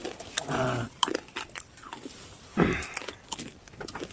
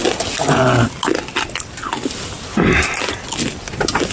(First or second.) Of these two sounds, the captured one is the second